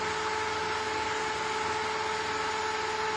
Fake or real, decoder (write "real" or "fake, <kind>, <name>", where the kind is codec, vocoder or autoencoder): real